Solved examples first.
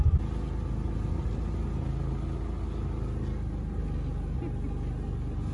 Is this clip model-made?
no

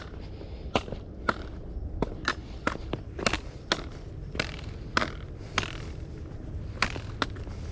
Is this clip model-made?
no